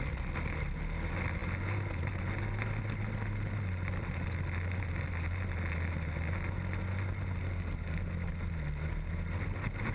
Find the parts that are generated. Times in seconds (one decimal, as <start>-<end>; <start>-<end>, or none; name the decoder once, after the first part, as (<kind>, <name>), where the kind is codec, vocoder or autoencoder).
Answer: none